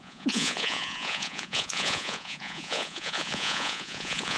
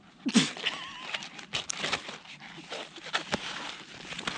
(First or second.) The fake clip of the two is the first